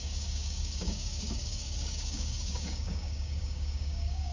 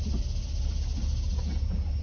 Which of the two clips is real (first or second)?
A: second